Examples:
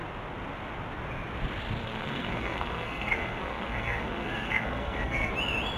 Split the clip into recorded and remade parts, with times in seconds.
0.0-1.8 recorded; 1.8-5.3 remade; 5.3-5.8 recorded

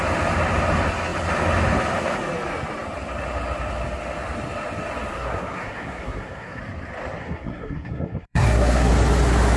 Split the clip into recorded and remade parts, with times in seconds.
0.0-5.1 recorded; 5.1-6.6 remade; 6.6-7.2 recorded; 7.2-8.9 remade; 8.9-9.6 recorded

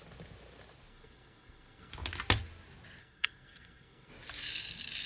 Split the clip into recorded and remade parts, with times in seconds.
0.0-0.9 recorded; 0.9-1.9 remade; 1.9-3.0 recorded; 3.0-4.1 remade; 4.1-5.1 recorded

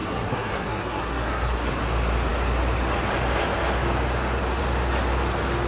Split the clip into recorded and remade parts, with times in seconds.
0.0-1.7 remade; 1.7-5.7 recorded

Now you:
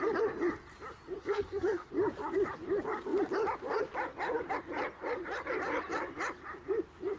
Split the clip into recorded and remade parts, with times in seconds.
0.0-1.2 recorded; 1.2-1.9 remade; 1.9-7.2 recorded

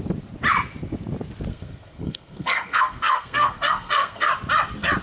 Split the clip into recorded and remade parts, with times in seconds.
0.0-1.5 recorded; 1.5-4.3 remade; 4.3-5.0 recorded

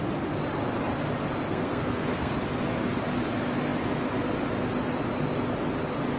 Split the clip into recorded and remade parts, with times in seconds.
0.0-1.5 recorded; 1.5-2.3 remade; 2.3-6.2 recorded

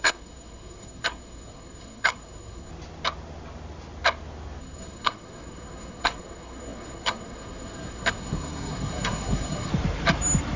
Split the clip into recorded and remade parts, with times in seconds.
0.0-2.7 remade; 2.7-4.6 recorded; 4.6-9.7 remade; 9.7-10.6 recorded